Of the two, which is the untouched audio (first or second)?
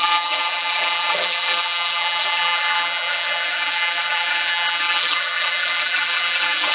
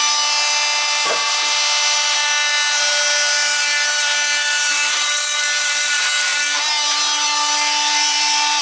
second